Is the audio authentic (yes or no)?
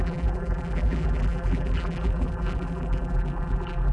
no